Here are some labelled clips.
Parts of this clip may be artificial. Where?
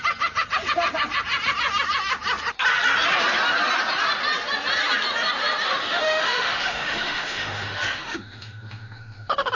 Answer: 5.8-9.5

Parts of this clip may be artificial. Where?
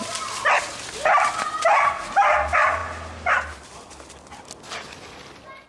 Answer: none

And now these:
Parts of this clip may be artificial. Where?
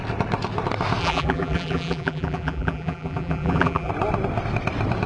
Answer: 1.0-3.9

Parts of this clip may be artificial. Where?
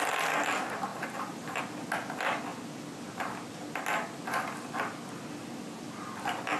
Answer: 0.9-1.6